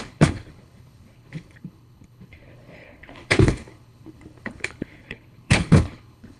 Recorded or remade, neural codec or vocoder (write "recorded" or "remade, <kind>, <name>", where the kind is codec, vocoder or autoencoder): remade, codec, HILCodec